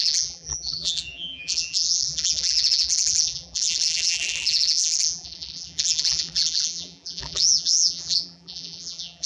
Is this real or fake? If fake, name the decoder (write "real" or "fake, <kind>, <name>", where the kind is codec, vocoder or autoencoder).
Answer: fake, vocoder, BigVGAN v2